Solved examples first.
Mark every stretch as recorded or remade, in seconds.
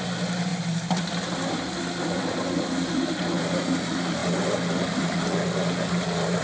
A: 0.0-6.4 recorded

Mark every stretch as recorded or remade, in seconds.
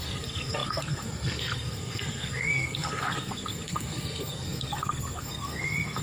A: 0.0-6.0 remade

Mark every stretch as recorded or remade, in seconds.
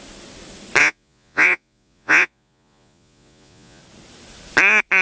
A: 0.0-0.8 recorded; 0.8-3.8 remade; 3.8-5.0 recorded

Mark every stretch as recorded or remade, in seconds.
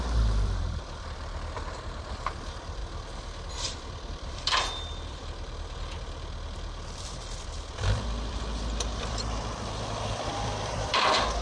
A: 0.0-2.8 remade; 2.8-3.5 recorded; 3.5-11.4 remade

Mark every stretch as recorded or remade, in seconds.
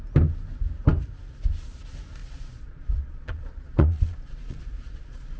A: 0.0-2.2 recorded; 2.2-5.4 remade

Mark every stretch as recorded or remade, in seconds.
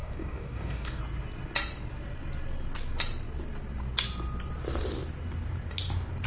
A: 0.0-1.0 remade; 1.0-6.3 recorded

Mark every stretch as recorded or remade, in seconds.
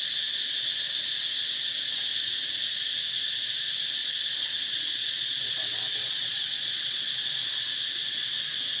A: 0.0-4.0 recorded; 4.0-7.1 remade; 7.1-8.8 recorded